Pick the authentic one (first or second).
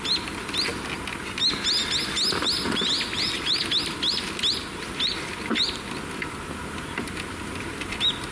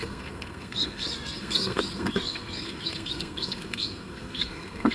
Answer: first